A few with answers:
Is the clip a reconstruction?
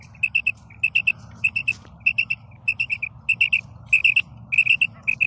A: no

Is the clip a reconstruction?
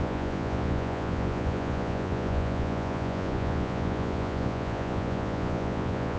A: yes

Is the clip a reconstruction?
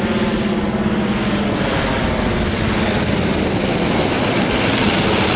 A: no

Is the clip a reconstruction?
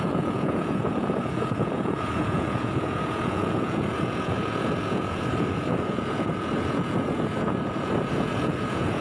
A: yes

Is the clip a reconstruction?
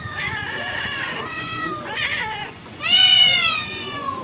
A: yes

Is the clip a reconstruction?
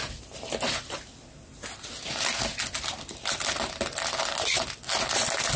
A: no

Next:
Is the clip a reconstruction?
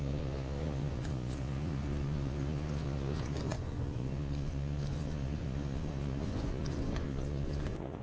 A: yes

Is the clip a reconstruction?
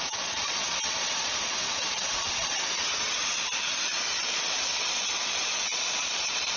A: yes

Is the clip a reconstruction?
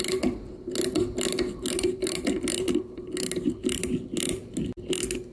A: no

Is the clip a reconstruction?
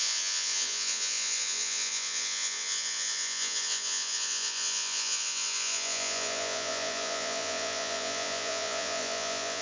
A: yes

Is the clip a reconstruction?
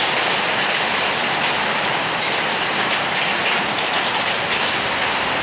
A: no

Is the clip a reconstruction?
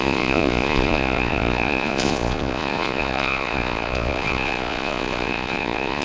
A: yes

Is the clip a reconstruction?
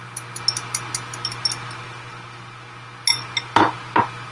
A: no